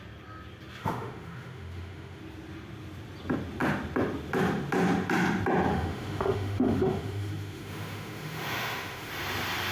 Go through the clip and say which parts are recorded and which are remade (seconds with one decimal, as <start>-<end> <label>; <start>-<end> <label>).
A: 0.0-0.8 recorded; 0.8-2.2 remade; 2.2-5.7 recorded; 5.7-9.1 remade; 9.1-9.7 recorded